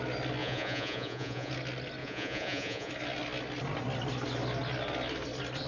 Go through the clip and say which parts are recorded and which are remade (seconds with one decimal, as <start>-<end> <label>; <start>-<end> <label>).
0.0-0.4 recorded; 0.4-1.5 remade; 1.5-2.0 recorded; 2.0-2.9 remade; 2.9-5.7 recorded